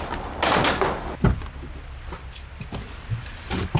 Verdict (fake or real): real